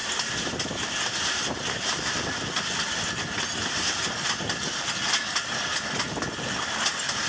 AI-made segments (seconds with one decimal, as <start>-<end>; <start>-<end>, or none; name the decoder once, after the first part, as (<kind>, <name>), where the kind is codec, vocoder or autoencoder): none